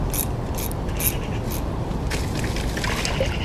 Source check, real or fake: real